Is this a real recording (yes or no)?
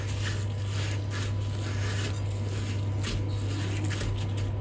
yes